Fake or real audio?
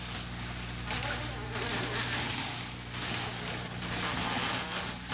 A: real